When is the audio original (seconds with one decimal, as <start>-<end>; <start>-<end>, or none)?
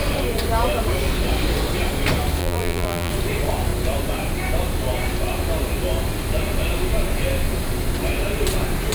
0.0-2.4; 3.1-8.9